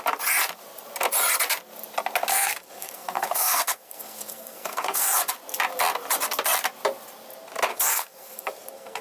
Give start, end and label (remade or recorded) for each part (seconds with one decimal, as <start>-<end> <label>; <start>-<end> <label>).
0.0-2.3 recorded; 2.3-5.3 remade; 5.3-7.7 recorded; 7.7-9.0 remade